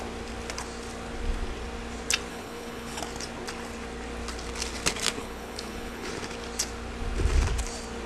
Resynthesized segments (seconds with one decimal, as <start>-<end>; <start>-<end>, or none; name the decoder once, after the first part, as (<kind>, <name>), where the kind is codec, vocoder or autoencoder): 2.3-3.0 (codec, HILCodec); 5.2-6.1